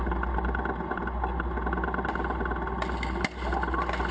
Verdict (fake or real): real